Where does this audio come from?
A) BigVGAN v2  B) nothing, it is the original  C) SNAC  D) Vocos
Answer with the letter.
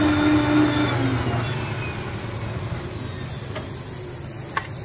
B